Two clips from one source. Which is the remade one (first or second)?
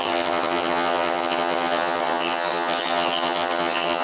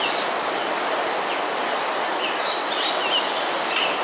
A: first